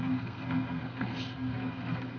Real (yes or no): no